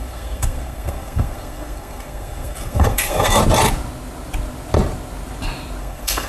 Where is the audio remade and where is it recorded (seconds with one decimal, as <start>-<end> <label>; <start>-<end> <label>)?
0.0-3.4 remade; 3.4-5.8 recorded; 5.8-6.3 remade